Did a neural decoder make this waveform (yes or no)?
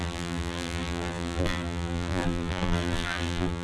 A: yes